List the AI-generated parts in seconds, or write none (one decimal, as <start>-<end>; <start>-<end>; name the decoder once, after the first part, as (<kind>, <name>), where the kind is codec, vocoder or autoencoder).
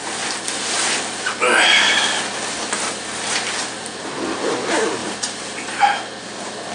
5.0-5.8 (vocoder, BigVGAN v2)